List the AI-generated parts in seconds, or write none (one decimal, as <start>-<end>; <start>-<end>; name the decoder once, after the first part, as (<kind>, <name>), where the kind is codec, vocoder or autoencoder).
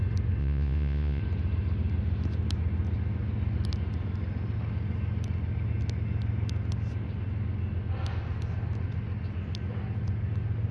0.4-1.2 (vocoder, Vocos)